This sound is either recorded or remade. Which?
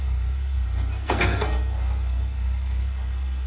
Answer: remade